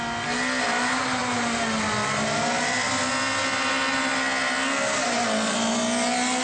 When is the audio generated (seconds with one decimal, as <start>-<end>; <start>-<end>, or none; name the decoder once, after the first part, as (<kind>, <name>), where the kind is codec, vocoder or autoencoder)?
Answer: none